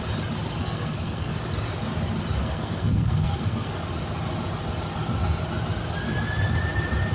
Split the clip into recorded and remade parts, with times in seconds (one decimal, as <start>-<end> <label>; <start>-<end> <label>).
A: 0.0-0.6 recorded; 0.6-1.3 remade; 1.3-2.4 recorded; 2.4-3.7 remade; 3.7-7.1 recorded